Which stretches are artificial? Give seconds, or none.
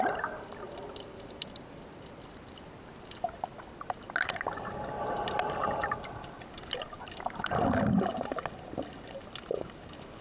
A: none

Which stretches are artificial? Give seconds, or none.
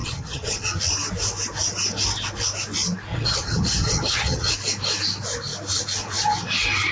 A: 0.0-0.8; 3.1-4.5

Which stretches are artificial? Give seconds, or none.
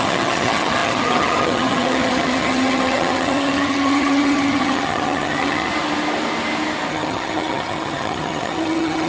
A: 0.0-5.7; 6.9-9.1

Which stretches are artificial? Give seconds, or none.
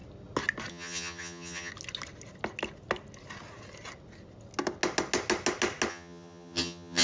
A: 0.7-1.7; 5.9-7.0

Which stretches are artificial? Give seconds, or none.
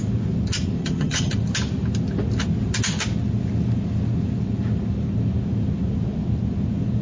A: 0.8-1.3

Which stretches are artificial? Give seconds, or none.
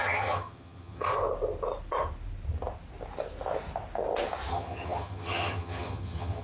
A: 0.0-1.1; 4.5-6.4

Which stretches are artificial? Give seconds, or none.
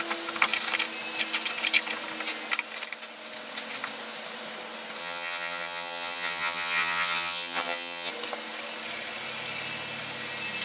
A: 5.0-8.1